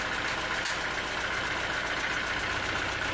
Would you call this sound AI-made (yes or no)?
no